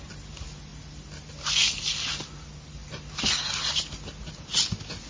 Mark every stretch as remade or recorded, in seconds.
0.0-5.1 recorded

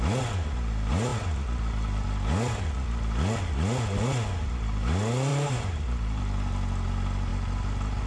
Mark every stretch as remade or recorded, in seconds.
0.0-5.3 recorded; 5.3-6.2 remade; 6.2-8.1 recorded

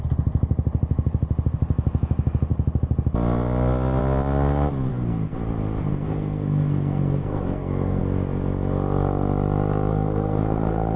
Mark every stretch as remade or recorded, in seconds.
0.0-4.9 recorded; 4.9-5.4 remade; 5.4-5.9 recorded; 5.9-8.0 remade; 8.0-9.9 recorded; 9.9-11.0 remade